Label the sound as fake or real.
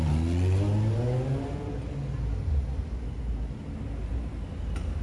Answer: real